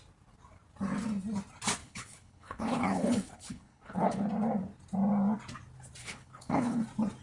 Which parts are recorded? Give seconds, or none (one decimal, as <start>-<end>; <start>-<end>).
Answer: 0.0-1.8; 4.3-6.0; 6.8-7.2